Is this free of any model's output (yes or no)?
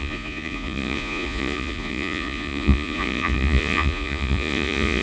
no